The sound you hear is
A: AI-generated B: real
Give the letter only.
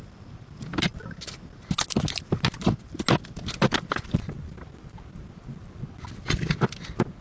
B